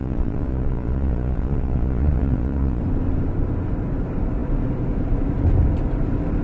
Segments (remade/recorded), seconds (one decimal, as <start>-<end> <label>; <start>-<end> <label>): 0.0-2.8 remade; 2.8-6.4 recorded